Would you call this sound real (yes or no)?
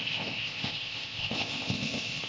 no